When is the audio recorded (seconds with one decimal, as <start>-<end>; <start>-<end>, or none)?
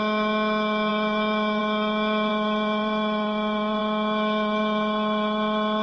0.0-0.9; 1.6-2.3; 3.8-5.8